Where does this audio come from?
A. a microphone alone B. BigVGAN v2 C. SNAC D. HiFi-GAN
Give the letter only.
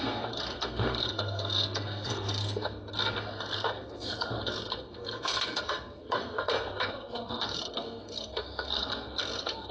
C